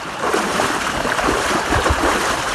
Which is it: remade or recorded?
remade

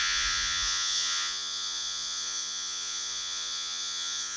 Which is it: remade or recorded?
remade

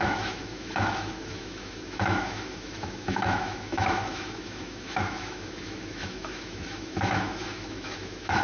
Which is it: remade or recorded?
remade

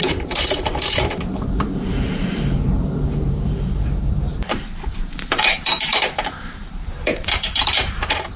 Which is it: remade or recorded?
remade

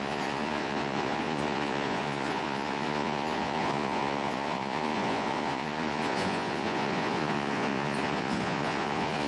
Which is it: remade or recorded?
remade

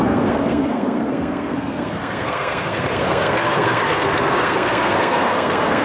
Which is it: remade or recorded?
remade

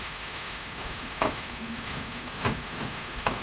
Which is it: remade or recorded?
remade